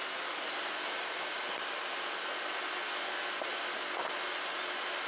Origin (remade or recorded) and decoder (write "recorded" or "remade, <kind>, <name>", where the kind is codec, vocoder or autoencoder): recorded